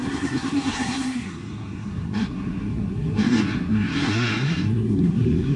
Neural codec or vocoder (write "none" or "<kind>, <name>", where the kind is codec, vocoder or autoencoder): codec, SNAC